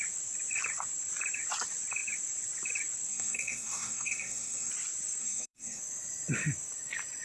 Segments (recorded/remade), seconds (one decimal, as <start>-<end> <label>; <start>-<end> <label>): 0.0-3.1 recorded; 3.1-4.7 remade; 4.7-5.2 recorded; 5.2-5.8 remade; 5.8-7.2 recorded